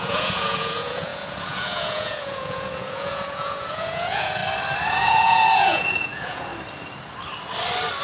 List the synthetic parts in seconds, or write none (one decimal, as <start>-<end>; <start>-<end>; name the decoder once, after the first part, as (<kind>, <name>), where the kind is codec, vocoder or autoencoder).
0.0-4.4 (vocoder, Vocos); 4.9-6.5

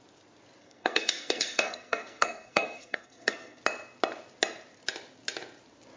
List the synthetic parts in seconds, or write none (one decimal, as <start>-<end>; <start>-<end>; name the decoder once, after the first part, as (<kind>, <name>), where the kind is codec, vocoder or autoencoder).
0.6-3.6 (codec, SNAC)

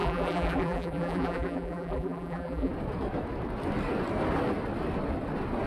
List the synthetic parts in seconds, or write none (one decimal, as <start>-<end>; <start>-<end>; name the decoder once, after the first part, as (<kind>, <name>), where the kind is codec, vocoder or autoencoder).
0.0-2.7 (vocoder, BigVGAN v2)

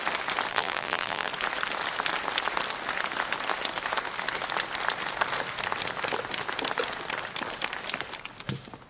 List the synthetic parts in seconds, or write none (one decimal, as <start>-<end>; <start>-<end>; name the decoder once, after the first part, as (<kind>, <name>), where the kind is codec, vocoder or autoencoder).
0.5-1.3 (vocoder, BigVGAN v2)

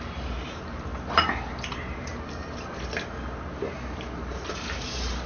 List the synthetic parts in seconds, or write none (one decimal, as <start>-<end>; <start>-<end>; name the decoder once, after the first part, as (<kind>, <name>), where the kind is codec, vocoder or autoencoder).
0.0-0.9 (vocoder, BigVGAN v2); 1.7-2.1; 4.5-5.3